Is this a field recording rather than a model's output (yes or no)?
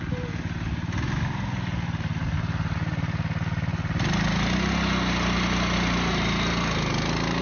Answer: yes